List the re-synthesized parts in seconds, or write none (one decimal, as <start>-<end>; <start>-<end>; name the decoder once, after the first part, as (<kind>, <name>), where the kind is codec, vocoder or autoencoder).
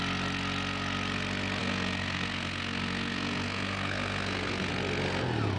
1.6-4.7 (codec, SNAC)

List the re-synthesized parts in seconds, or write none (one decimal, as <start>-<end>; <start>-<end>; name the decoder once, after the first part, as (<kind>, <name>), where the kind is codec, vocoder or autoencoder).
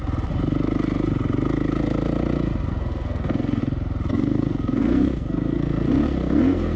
2.7-3.6 (codec, SNAC); 4.1-6.8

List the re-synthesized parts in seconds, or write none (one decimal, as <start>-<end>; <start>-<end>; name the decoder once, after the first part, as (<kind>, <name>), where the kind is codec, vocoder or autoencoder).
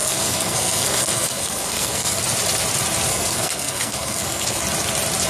0.0-2.2 (codec, SNAC); 3.1-4.6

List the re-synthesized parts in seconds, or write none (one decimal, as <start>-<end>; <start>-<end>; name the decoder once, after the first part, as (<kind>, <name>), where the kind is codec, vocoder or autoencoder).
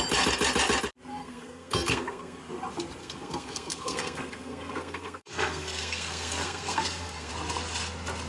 1.2-2.4 (codec, SNAC); 3.0-7.3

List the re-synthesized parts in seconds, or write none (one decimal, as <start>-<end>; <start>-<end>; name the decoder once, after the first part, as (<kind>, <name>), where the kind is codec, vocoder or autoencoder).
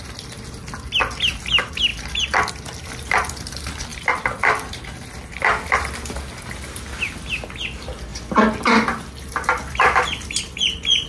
none